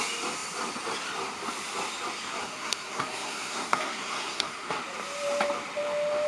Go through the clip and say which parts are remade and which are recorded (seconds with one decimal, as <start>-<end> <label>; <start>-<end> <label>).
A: 0.0-2.4 recorded; 2.4-4.8 remade; 4.8-6.3 recorded